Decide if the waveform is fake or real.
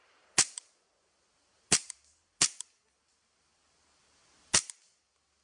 real